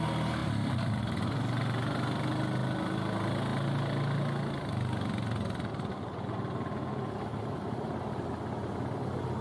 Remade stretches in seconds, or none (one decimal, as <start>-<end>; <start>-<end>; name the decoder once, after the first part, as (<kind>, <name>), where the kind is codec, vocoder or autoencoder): 0.4-1.0 (vocoder, BigVGAN v2); 7.3-8.3